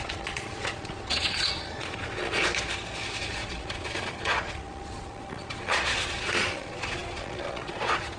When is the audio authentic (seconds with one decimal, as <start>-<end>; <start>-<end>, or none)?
2.4-3.2